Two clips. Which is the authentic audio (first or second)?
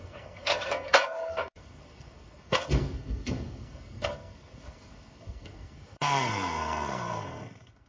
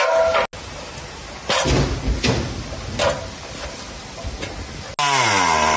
second